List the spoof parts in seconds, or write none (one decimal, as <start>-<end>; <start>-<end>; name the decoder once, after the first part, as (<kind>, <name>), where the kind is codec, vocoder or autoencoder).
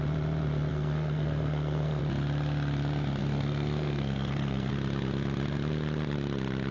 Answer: 0.7-2.0 (codec, SNAC); 3.2-4.7